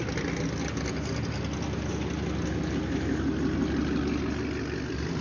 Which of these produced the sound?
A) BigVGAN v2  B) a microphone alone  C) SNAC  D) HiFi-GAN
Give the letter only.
B